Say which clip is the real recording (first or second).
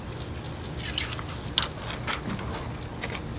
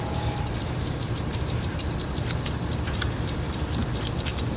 first